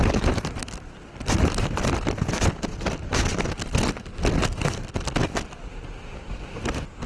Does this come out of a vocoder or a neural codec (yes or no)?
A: no